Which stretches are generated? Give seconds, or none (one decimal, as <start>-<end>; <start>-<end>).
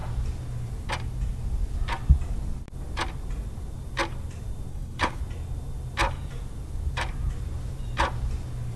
4.7-5.2